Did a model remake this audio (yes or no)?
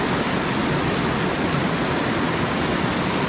no